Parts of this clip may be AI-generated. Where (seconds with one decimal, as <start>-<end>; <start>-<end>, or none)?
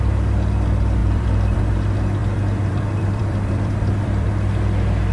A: 1.0-1.6; 2.2-4.3